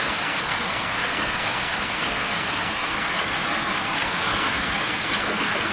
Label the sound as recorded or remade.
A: remade